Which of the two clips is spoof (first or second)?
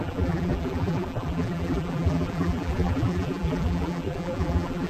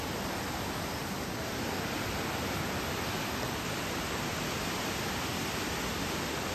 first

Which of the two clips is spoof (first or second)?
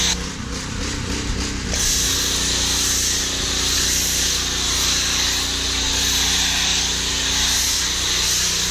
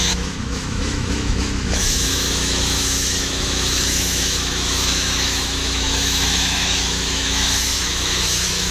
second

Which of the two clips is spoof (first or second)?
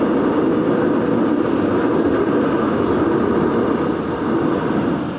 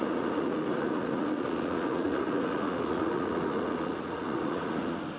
second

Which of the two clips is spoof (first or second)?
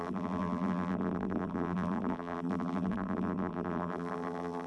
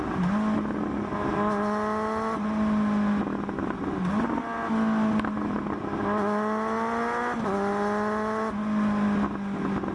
first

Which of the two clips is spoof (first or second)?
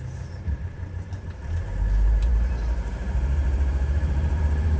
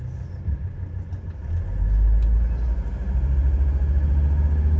first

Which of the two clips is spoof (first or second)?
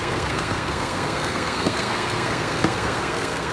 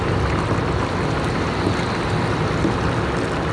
first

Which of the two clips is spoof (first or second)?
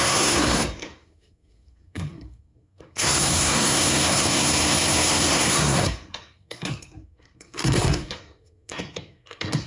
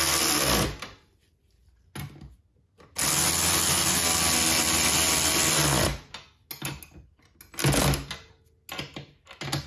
first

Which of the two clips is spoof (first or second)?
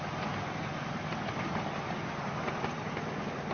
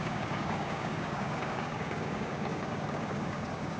second